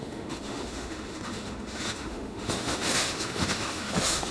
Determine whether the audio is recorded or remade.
remade